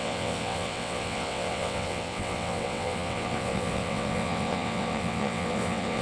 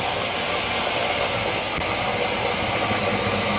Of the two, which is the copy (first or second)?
first